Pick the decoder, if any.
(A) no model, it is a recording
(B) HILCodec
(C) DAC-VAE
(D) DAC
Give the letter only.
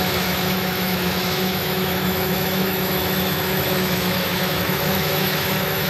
C